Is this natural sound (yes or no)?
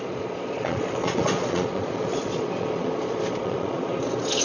no